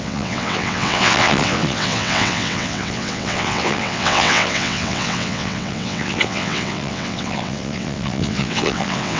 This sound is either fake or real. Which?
fake